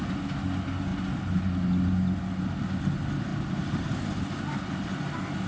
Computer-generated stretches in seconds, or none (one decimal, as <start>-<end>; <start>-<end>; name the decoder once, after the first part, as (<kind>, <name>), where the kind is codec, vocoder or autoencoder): 3.3-4.4 (vocoder, BigVGAN v2)